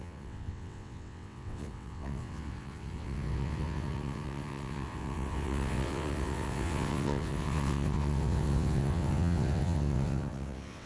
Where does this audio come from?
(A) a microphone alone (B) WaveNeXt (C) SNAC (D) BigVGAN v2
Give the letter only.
B